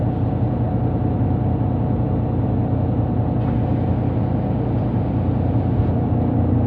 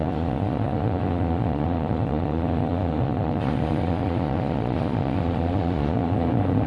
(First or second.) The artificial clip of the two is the second